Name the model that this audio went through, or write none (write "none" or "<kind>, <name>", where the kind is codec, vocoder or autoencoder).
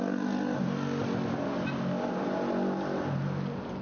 none